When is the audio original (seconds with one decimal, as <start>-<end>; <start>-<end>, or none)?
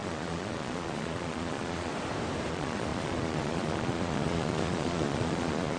1.9-2.5